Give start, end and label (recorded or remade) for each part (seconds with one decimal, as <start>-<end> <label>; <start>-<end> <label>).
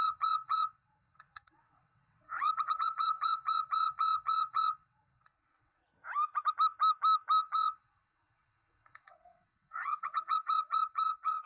0.0-5.8 remade; 5.8-7.4 recorded; 7.4-11.5 remade